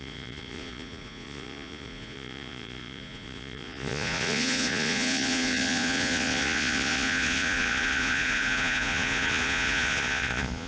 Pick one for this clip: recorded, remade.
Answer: remade